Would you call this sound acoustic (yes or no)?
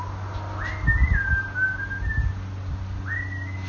yes